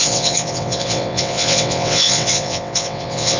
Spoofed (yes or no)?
yes